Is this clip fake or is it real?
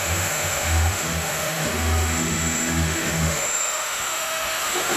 fake